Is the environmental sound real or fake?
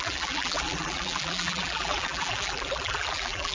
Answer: fake